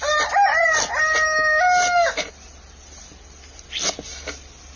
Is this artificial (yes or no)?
no